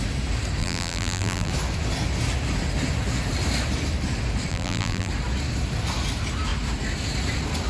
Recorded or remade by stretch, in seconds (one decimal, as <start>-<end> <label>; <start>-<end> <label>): 0.0-0.6 recorded; 0.6-1.5 remade; 1.5-4.5 recorded; 4.5-5.1 remade; 5.1-7.7 recorded